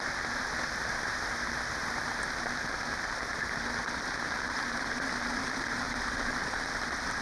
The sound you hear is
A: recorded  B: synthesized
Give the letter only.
A